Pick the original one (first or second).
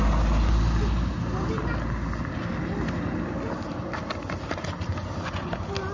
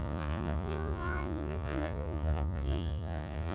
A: first